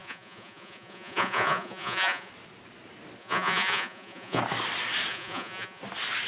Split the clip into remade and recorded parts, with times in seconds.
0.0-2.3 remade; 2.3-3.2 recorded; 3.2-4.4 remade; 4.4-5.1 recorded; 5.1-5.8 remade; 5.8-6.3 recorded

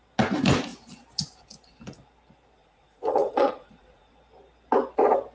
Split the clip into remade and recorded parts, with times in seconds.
0.0-2.6 recorded; 2.6-4.1 remade; 4.1-5.3 recorded